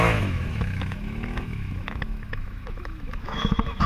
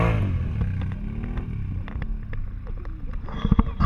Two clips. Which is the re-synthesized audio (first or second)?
first